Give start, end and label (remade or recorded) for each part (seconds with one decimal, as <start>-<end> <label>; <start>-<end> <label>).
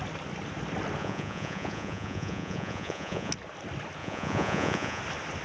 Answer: 0.0-1.0 recorded; 1.0-3.3 remade; 3.3-4.0 recorded; 4.0-5.0 remade; 5.0-5.4 recorded